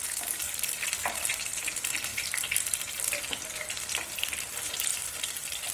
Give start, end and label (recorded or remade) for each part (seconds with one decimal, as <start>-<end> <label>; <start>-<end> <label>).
0.0-5.7 recorded